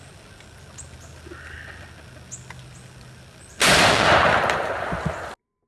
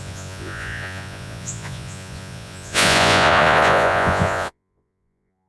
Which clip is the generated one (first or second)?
second